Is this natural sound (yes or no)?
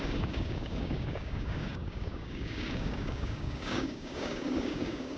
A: no